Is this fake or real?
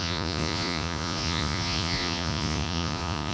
fake